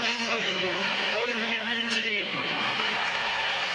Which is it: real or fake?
fake